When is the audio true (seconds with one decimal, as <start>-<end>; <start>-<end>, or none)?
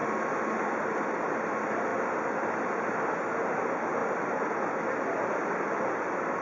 0.0-6.4